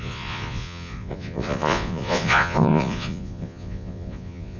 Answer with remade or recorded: remade